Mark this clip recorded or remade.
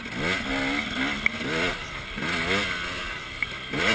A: recorded